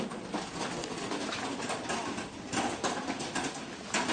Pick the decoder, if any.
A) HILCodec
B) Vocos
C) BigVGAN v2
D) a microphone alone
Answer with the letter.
D